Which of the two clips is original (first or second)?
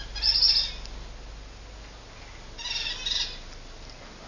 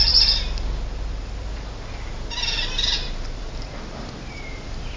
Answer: first